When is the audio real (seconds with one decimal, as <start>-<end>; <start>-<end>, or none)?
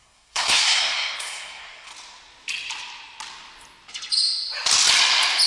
1.9-5.5